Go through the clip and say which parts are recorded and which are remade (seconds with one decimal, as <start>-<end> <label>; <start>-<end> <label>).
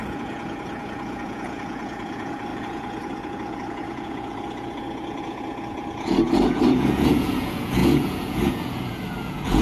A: 0.0-9.6 remade